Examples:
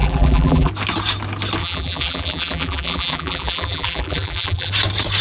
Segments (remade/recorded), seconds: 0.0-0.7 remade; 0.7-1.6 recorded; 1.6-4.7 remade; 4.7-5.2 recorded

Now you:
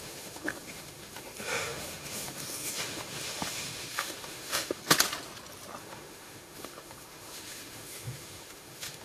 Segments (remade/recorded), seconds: 0.0-4.8 remade; 4.8-5.8 recorded; 5.8-9.0 remade

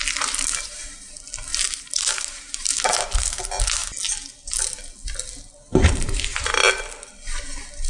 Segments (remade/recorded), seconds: 0.0-1.5 recorded; 1.5-3.4 remade; 3.4-5.7 recorded; 5.7-6.5 remade; 6.5-7.9 recorded

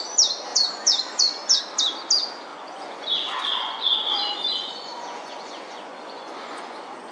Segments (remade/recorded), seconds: 0.0-0.5 recorded; 0.5-1.6 remade; 1.6-2.5 recorded; 2.5-7.1 remade

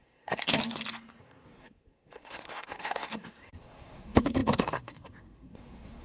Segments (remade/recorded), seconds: 0.0-0.5 remade; 0.5-1.2 recorded; 1.2-6.0 remade

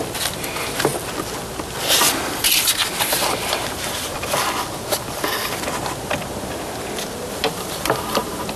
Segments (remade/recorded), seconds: 0.0-0.9 remade; 0.9-3.1 recorded; 3.1-4.1 remade; 4.1-7.3 recorded; 7.3-8.6 remade

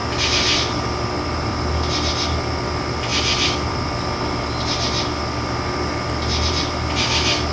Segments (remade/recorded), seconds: 0.0-7.5 recorded